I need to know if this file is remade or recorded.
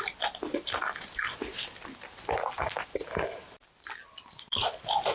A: recorded